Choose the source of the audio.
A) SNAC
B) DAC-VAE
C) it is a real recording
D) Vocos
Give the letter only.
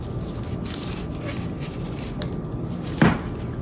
C